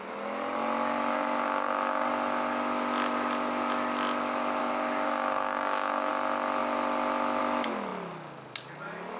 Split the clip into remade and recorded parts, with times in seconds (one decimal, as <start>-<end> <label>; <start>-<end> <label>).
0.0-1.1 recorded; 1.1-2.1 remade; 2.1-4.6 recorded; 4.6-6.1 remade; 6.1-9.2 recorded